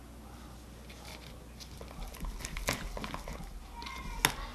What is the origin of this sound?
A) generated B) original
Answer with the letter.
B